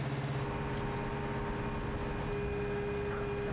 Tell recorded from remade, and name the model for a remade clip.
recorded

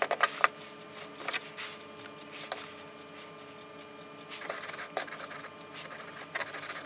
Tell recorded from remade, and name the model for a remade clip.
recorded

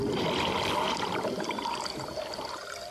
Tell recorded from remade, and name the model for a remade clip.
recorded